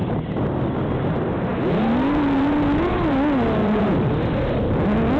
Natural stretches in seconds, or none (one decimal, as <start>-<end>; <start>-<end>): 0.0-3.6; 4.1-5.2